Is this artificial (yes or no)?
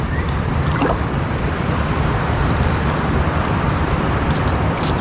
yes